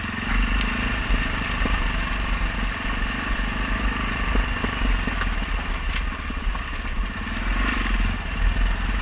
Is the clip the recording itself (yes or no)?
yes